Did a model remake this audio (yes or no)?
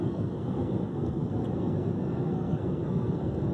yes